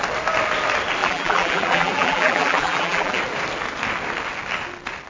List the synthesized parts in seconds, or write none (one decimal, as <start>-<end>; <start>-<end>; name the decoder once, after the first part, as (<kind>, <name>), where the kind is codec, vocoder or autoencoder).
1.0-3.2 (vocoder, BigVGAN v2)